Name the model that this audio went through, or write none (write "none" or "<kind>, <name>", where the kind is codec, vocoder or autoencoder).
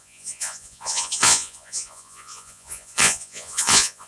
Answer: vocoder, Vocos